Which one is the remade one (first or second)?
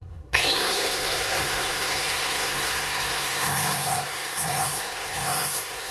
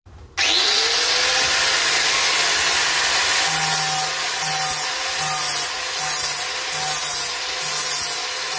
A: first